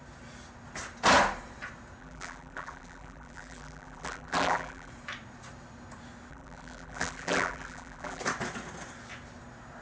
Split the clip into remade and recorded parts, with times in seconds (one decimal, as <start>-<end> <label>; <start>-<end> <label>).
0.0-2.0 recorded; 2.0-4.9 remade; 4.9-6.3 recorded; 6.3-8.2 remade; 8.2-9.8 recorded